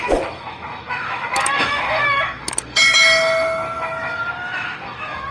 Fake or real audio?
fake